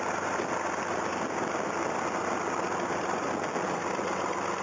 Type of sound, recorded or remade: recorded